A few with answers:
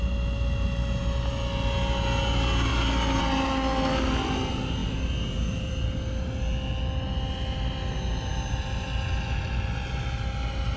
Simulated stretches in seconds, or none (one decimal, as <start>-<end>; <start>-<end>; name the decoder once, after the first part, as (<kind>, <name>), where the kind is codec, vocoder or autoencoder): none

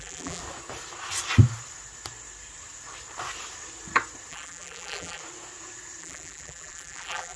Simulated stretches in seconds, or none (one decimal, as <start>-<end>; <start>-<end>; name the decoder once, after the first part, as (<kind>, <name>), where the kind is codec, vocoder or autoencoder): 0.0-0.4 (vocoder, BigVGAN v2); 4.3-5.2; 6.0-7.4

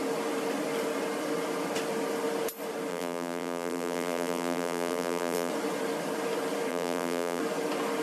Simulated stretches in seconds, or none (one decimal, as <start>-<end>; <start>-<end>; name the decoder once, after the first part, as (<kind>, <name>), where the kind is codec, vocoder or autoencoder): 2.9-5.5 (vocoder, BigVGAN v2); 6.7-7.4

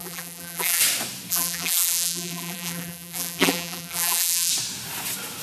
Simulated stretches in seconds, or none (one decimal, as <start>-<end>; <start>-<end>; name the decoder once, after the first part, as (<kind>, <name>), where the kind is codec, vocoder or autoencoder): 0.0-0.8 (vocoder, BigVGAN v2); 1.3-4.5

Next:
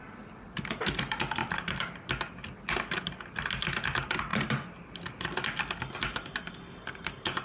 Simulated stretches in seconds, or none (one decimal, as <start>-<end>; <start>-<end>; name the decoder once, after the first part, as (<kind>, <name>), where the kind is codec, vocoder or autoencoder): 1.4-2.1 (vocoder, BigVGAN v2)

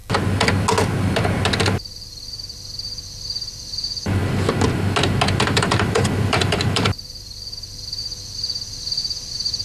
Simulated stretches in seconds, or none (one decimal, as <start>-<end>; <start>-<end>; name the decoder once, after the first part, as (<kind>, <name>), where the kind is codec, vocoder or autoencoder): 1.6-4.2 (vocoder, BigVGAN v2); 5.3-9.6

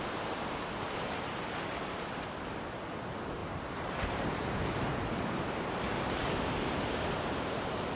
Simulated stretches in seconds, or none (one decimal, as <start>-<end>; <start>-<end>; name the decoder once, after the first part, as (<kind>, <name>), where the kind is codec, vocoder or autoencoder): 3.4-7.6 (vocoder, BigVGAN v2)